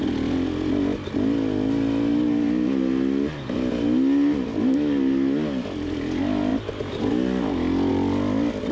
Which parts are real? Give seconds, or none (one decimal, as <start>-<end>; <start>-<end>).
0.0-8.7